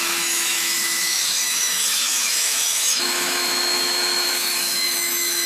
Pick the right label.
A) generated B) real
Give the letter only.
A